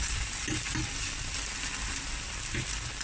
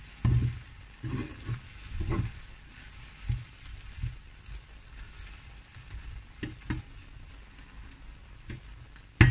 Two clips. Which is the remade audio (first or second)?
first